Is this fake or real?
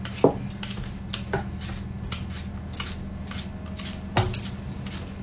real